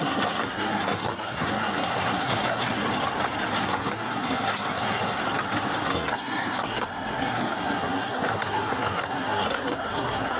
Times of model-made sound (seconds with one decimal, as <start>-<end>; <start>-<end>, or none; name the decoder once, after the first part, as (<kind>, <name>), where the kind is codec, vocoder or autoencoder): 0.0-2.8 (codec, SNAC); 3.6-5.2; 5.8-10.4